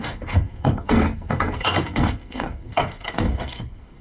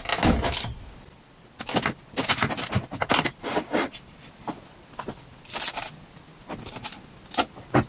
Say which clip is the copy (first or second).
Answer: first